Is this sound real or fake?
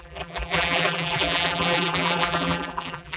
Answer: fake